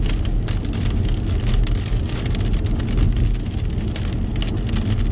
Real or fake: real